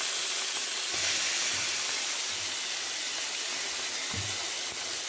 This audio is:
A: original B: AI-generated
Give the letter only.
A